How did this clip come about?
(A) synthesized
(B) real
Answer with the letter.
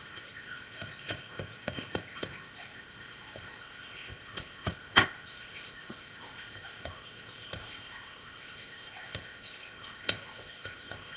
A